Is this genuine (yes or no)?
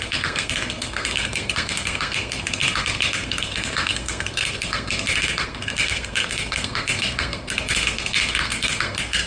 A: no